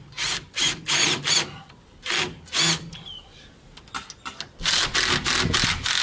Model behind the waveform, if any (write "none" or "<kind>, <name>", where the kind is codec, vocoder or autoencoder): none